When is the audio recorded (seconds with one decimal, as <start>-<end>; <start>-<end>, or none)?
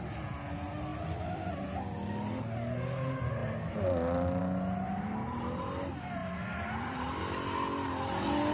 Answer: 0.0-0.9; 1.5-3.4; 4.4-6.2; 7.2-8.5